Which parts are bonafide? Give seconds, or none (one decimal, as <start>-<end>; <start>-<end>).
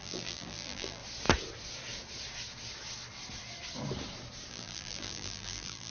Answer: 1.0-4.5